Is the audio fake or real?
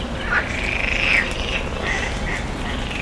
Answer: real